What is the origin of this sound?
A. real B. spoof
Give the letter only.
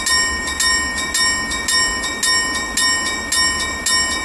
A